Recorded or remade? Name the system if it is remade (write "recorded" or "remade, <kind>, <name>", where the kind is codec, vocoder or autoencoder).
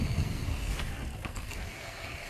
remade, codec, SNAC